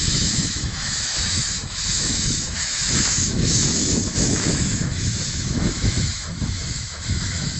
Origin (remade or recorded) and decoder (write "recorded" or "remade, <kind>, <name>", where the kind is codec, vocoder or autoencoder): remade, autoencoder, DAC-VAE